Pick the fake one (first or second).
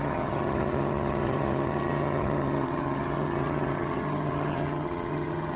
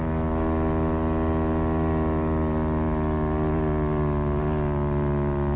first